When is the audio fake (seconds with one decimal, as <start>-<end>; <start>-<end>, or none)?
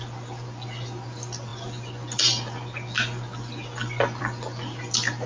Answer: none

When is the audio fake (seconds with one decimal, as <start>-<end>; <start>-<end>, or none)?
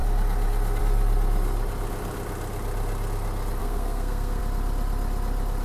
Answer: 3.6-4.4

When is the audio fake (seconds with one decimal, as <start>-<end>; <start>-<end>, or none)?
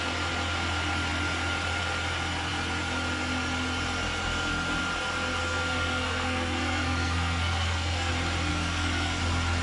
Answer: 5.4-8.1; 8.5-9.2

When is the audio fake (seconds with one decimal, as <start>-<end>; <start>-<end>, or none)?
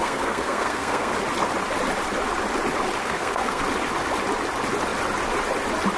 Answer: 0.0-1.1; 3.0-3.6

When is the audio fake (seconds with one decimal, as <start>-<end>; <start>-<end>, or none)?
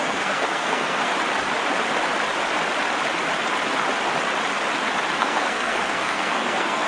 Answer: 0.0-1.1; 5.2-6.9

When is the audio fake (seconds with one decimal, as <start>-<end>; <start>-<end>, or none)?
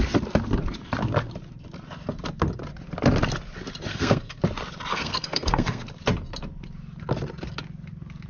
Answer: 3.9-4.4; 4.9-5.8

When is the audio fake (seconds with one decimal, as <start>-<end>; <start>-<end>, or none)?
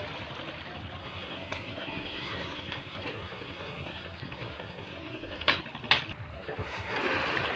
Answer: 1.0-5.6; 6.3-7.0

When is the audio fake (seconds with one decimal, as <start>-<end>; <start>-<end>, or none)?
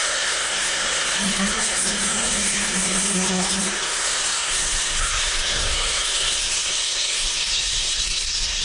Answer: 0.0-8.6